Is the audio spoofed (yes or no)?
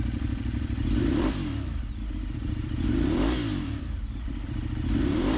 yes